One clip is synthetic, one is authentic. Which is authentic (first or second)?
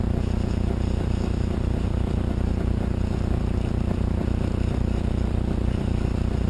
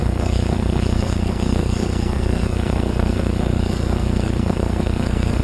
first